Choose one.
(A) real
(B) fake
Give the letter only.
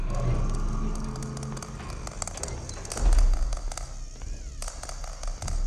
A